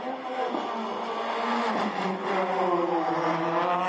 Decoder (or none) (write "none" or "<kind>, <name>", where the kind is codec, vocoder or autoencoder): none